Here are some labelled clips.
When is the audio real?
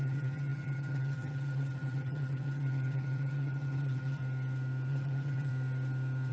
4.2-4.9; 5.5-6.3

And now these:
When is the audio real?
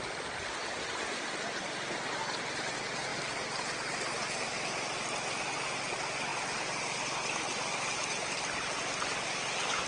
0.0-9.9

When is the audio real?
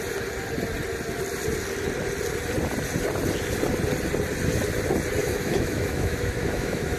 0.0-5.2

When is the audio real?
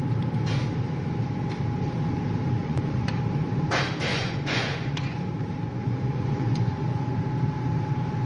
0.0-2.6; 3.1-4.1; 5.2-5.7; 7.2-8.3